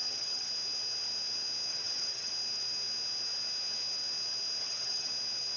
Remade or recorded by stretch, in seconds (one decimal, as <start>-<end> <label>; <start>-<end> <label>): 0.0-0.5 remade; 0.5-1.7 recorded; 1.7-2.3 remade; 2.3-4.6 recorded; 4.6-5.1 remade; 5.1-5.6 recorded